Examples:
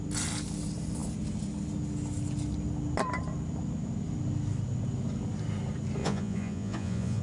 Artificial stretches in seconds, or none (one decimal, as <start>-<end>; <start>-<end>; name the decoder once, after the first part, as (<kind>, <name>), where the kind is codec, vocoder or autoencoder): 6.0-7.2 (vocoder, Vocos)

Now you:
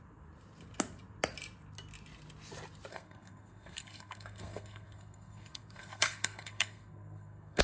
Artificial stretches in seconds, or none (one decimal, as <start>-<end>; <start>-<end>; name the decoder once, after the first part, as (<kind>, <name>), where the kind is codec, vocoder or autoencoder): 2.9-7.6 (codec, SNAC)

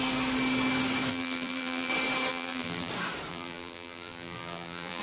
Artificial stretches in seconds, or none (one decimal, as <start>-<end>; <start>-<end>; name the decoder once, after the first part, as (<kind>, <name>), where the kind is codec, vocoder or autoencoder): 1.1-1.9 (vocoder, BigVGAN v2); 2.3-2.9; 3.3-5.0

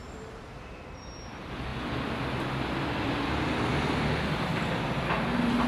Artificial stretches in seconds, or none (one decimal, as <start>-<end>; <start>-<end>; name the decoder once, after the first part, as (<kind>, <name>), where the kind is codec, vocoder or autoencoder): 0.0-0.6 (vocoder, BigVGAN v2)

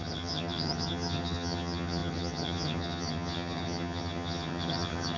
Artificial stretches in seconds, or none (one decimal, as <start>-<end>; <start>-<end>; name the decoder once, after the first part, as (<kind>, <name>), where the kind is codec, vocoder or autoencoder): 0.0-5.2 (vocoder, HiFi-GAN)

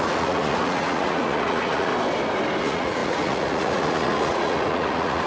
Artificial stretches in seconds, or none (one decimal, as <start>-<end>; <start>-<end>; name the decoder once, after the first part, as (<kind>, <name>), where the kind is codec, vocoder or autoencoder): 0.0-1.9 (vocoder, Vocos); 2.6-5.3

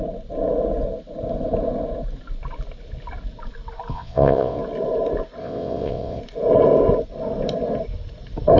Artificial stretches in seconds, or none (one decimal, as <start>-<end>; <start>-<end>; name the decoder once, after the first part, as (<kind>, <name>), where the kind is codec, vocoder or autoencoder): 3.9-4.6 (vocoder, WaveNeXt); 5.4-6.2